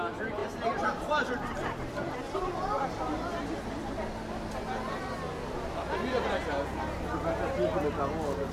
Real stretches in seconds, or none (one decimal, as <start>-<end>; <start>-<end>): 0.0-0.4; 2.1-8.5